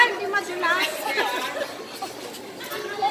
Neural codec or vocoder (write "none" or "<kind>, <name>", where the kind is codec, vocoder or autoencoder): none